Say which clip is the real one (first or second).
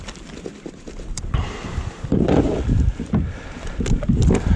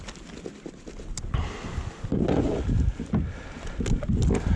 second